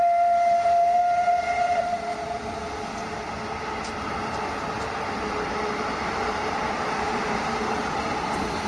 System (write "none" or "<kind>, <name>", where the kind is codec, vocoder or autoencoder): none